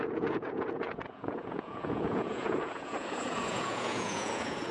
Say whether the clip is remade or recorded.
remade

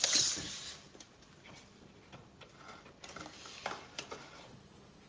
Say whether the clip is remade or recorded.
recorded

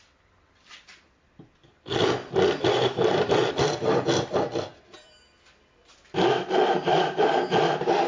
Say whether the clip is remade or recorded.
recorded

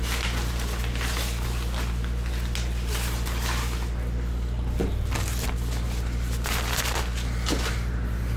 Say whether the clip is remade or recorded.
recorded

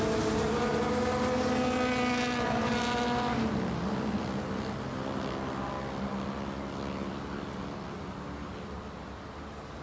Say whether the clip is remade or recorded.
recorded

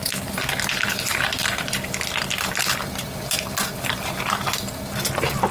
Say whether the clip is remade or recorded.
recorded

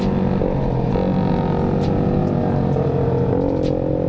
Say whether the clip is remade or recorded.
recorded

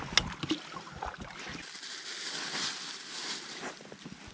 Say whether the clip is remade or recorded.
recorded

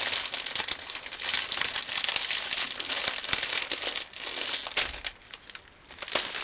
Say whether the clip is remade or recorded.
recorded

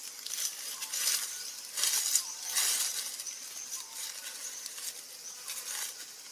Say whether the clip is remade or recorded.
recorded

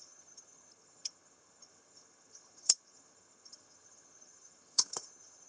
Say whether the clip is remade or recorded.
remade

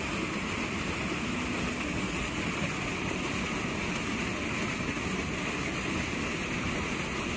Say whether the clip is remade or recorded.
recorded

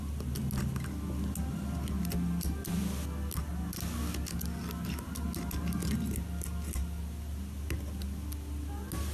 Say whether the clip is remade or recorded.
recorded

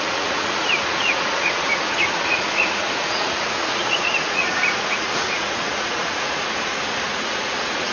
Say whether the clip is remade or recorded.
remade